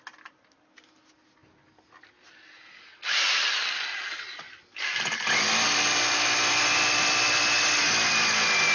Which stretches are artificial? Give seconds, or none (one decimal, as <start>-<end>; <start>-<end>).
none